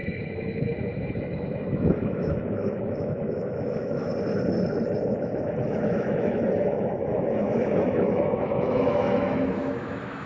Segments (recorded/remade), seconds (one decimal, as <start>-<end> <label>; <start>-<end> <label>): 0.0-4.1 remade; 4.1-5.1 recorded; 5.1-10.3 remade